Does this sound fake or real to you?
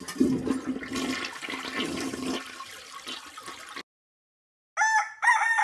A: real